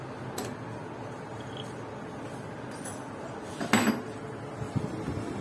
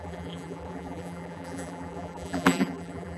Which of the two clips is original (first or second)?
first